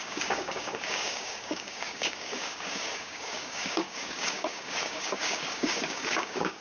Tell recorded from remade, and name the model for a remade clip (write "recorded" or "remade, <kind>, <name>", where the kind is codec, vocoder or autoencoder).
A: remade, codec, DAC